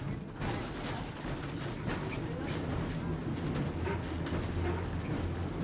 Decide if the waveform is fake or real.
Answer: real